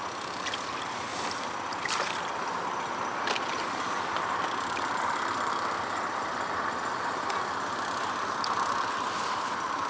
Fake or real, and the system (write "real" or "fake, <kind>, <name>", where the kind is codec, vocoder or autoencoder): real